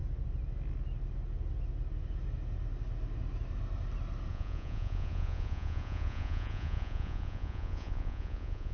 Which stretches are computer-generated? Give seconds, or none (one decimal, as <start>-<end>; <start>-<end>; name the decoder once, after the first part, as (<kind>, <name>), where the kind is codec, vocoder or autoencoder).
4.3-8.7 (vocoder, Vocos)